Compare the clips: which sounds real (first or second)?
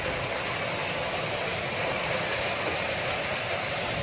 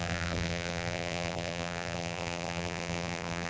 first